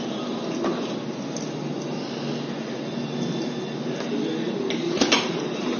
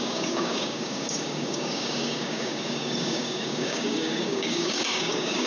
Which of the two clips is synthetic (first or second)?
second